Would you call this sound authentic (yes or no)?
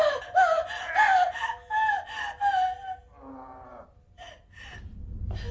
yes